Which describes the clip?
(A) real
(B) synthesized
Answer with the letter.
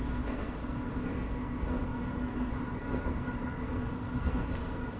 B